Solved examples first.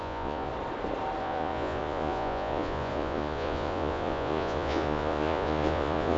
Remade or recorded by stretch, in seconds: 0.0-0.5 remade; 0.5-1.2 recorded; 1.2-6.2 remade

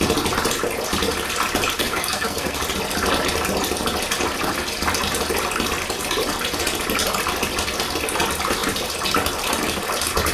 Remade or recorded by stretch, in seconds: 0.0-1.8 recorded; 1.8-2.6 remade; 2.6-10.3 recorded

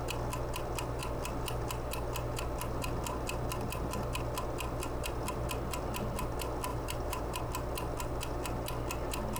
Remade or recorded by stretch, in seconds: 0.0-6.7 recorded; 6.7-7.4 remade; 7.4-9.4 recorded

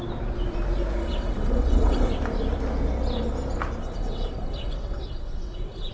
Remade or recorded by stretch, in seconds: 0.0-1.0 recorded; 1.0-2.1 remade; 2.1-3.8 recorded; 3.8-5.9 remade